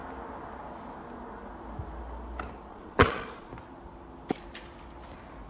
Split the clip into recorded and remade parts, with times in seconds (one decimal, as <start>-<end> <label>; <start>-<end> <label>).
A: 0.0-2.7 recorded; 2.7-3.5 remade; 3.5-5.5 recorded